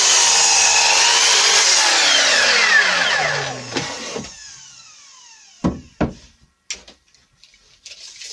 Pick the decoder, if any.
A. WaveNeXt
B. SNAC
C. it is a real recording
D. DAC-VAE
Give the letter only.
C